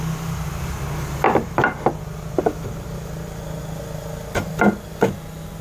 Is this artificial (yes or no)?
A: no